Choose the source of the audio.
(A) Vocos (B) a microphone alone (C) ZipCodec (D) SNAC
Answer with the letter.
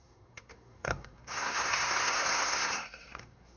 D